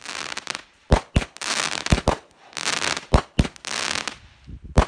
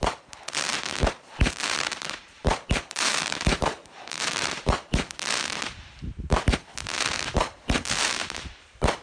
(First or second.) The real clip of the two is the first